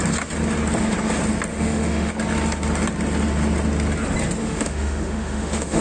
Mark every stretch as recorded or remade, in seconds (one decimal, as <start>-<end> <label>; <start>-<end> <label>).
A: 0.0-1.5 recorded; 1.5-2.1 remade; 2.1-4.4 recorded; 4.4-5.8 remade